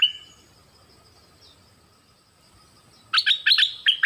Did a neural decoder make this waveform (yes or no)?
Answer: no